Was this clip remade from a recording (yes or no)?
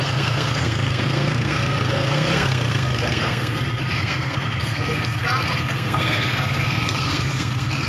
yes